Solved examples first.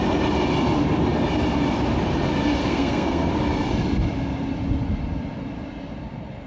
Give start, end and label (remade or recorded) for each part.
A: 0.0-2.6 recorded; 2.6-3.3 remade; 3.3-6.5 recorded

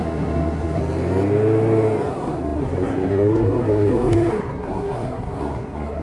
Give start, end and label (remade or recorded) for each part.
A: 0.0-0.8 remade; 0.8-2.1 recorded; 2.1-6.0 remade

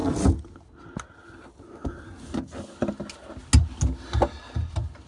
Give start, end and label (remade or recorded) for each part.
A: 0.0-5.1 recorded

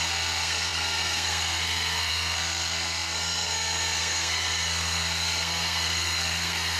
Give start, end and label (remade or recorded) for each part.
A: 0.0-6.8 remade